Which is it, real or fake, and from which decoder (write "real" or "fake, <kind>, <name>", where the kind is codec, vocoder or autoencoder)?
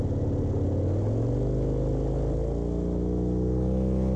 real